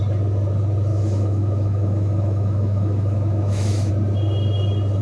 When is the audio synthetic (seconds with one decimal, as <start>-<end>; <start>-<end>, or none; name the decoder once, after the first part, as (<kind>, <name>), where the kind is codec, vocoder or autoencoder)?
0.9-3.9 (autoencoder, DAC-VAE)